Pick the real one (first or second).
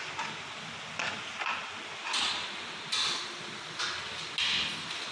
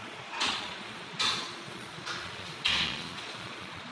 first